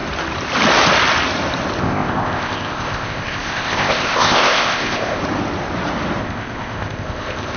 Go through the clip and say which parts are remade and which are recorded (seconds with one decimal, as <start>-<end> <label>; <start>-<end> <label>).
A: 0.0-1.8 recorded; 1.8-5.2 remade; 5.2-6.2 recorded; 6.2-7.6 remade